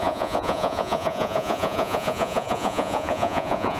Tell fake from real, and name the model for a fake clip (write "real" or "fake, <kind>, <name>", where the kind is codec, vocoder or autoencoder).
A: fake, vocoder, Vocos